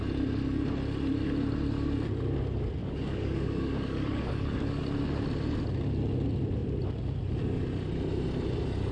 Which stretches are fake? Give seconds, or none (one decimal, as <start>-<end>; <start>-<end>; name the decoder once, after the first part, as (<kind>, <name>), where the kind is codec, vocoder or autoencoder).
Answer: 2.8-4.8 (codec, DAC)